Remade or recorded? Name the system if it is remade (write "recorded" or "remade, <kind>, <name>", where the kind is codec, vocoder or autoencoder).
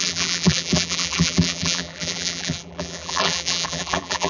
remade, vocoder, BigVGAN v2